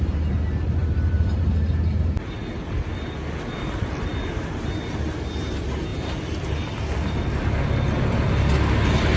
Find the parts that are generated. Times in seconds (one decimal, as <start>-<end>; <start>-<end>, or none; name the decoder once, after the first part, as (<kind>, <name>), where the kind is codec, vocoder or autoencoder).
0.8-1.4 (vocoder, BigVGAN v2)